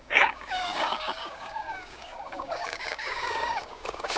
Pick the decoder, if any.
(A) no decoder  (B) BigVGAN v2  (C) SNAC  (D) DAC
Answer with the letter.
D